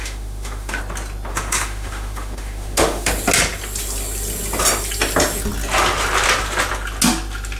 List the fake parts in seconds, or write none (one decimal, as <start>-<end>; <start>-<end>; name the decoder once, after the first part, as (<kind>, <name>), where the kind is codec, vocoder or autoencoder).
0.0-0.8 (autoencoder, DAC-VAE); 1.3-3.1